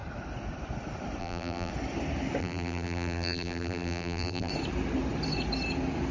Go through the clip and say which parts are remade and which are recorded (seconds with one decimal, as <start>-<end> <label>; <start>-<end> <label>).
0.0-1.2 recorded; 1.2-1.7 remade; 1.7-2.4 recorded; 2.4-4.5 remade; 4.5-6.1 recorded